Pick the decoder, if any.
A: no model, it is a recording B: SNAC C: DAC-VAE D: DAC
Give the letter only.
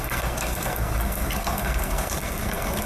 B